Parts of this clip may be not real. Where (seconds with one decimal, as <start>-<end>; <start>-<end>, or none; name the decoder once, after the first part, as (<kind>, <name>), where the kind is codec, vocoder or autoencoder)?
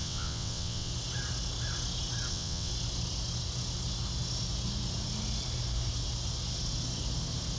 0.0-0.9 (vocoder, WaveNeXt); 2.3-2.7